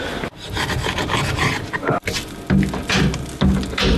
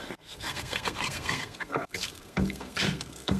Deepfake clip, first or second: second